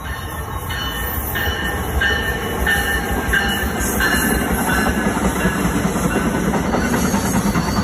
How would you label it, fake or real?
real